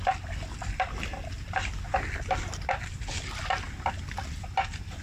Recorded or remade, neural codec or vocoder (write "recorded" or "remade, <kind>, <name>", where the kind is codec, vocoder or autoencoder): remade, vocoder, BigVGAN v2